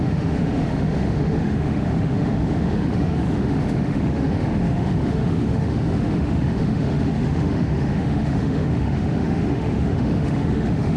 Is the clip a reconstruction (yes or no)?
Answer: yes